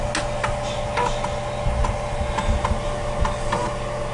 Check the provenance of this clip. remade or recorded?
recorded